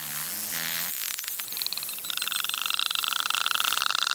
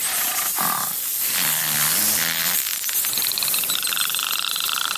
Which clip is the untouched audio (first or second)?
first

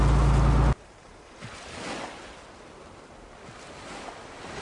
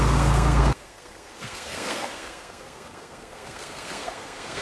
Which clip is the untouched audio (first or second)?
first